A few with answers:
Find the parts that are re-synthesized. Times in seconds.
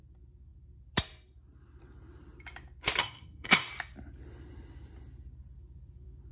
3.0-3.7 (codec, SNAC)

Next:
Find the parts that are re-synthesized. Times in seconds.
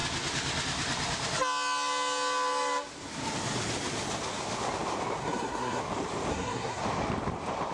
5.2-5.8 (codec, SNAC); 6.3-6.8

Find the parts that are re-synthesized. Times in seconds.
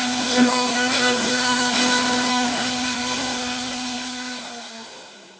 0.0-1.8 (codec, SNAC); 2.3-5.4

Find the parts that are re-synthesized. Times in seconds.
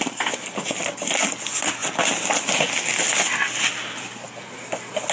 none